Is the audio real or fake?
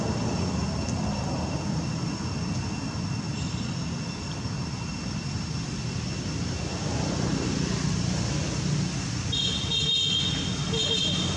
real